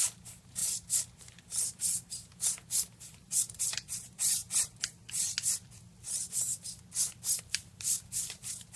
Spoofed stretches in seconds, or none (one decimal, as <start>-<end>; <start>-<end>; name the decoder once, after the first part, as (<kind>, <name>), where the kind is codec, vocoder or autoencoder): 0.0-4.4 (vocoder, BigVGAN v2); 6.1-6.5; 7.4-8.8